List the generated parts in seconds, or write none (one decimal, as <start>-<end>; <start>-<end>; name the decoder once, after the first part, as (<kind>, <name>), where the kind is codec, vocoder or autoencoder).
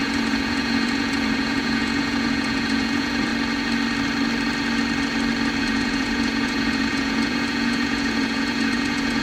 0.0-3.3 (vocoder, Vocos); 5.6-9.2